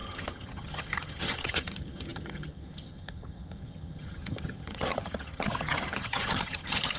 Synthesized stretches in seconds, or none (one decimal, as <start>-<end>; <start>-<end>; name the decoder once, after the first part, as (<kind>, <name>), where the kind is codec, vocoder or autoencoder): 0.0-7.0 (vocoder, HiFi-GAN)